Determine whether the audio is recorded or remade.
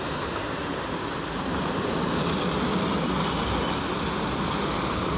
recorded